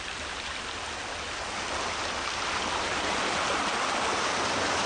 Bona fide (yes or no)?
yes